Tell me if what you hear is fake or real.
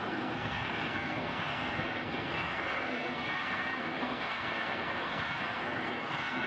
fake